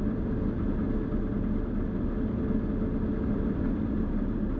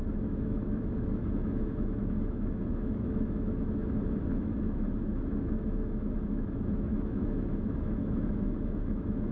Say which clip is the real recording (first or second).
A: first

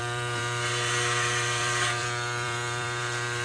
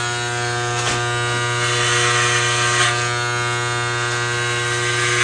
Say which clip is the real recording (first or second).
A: second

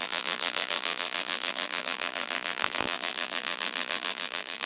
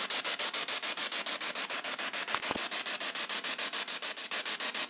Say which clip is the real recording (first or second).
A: second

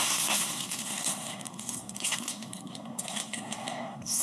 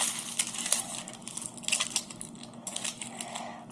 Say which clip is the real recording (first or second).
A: second